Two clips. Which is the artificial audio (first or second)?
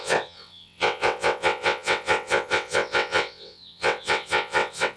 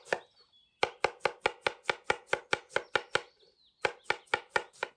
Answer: first